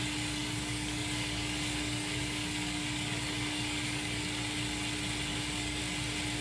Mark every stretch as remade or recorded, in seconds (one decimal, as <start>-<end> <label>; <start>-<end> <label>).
0.0-0.4 recorded; 0.4-4.2 remade; 4.2-5.3 recorded; 5.3-5.8 remade; 5.8-6.4 recorded